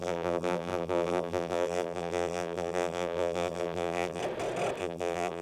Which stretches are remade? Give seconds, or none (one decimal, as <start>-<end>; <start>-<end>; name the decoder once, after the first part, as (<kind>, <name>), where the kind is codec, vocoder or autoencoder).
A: 0.0-4.2 (vocoder, BigVGAN v2); 4.8-5.4